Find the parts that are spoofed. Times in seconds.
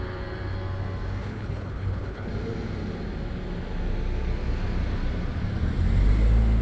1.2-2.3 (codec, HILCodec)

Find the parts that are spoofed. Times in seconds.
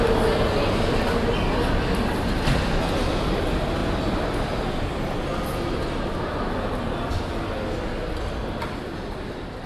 none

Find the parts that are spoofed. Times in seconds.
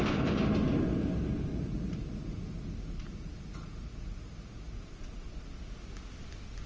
1.5-5.5 (vocoder, Vocos)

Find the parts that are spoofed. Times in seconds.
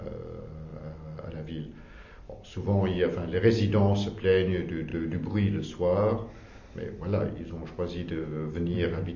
none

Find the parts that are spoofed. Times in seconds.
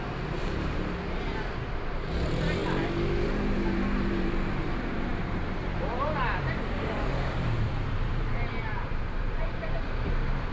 0.0-2.6 (vocoder, BigVGAN v2); 3.2-10.5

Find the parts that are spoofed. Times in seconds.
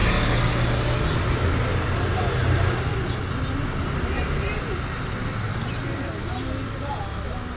none